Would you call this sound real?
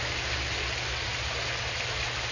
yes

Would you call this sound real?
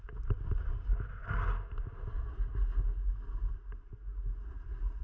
yes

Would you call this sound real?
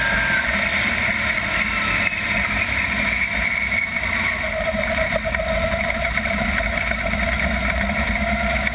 yes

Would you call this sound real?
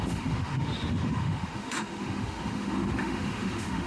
no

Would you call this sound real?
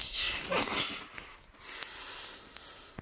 yes